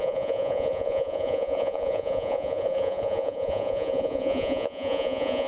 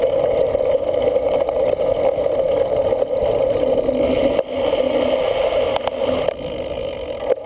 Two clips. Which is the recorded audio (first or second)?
second